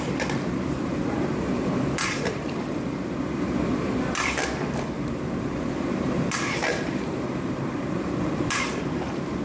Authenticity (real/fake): fake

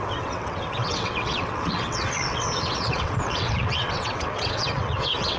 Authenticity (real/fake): fake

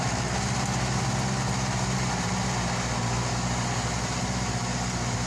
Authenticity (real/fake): real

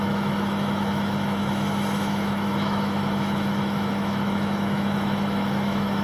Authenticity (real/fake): fake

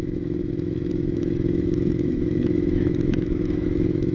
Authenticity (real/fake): fake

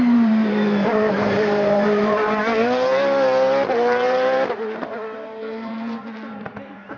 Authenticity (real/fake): fake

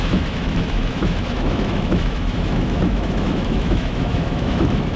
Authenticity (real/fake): fake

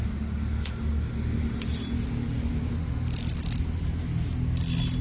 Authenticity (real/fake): real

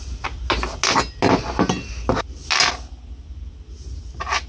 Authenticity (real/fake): real